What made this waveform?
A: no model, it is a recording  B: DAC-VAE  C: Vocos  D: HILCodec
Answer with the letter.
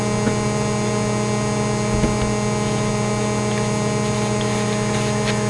A